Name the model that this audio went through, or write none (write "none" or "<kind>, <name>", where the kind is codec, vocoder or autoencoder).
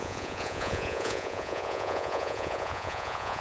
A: vocoder, Vocos